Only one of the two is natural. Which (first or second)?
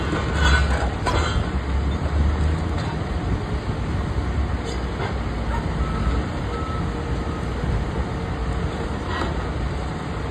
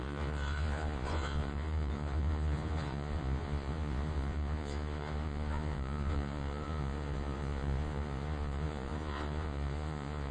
first